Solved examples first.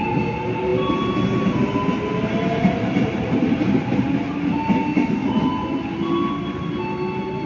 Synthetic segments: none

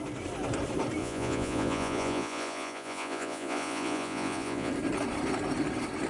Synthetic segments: 1.0-4.7 (vocoder, Vocos)

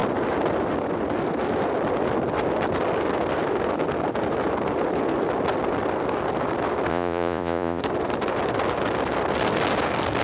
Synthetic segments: 6.9-7.8 (vocoder, Vocos)

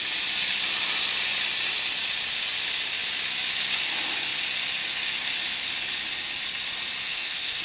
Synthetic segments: 7.0-7.6 (codec, SNAC)